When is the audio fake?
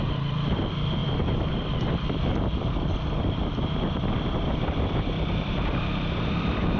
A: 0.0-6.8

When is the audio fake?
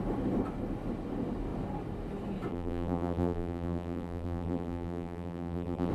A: 2.5-5.9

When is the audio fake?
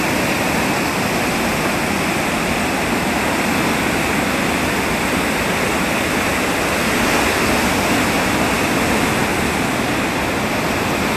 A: none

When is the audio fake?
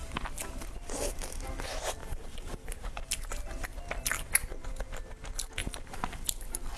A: 2.0-3.3; 5.6-6.2